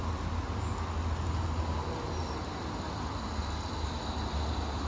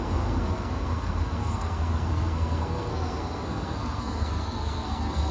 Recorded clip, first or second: first